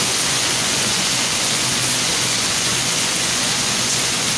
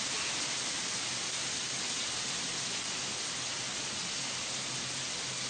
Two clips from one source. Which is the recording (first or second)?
second